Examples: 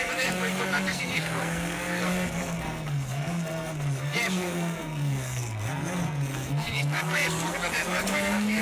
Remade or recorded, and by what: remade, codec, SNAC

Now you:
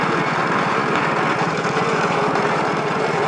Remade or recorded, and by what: remade, vocoder, Vocos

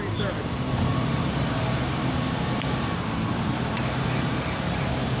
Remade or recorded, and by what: remade, vocoder, BigVGAN v2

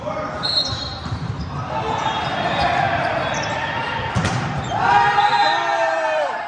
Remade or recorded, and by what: remade, vocoder, BigVGAN v2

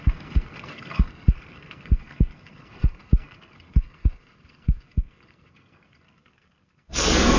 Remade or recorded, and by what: remade, codec, SNAC